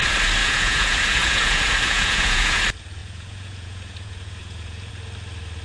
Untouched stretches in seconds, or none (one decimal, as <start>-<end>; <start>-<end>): 0.0-0.4; 2.6-3.0; 4.9-5.6